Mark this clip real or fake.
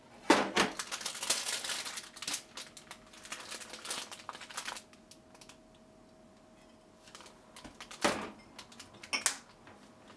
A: real